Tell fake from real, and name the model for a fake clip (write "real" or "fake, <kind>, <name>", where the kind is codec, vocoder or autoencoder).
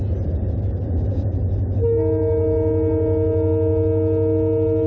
real